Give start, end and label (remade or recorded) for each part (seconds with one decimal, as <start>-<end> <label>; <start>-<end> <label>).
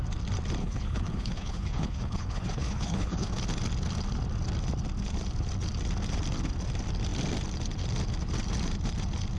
0.0-0.6 recorded; 0.6-3.3 remade; 3.3-9.4 recorded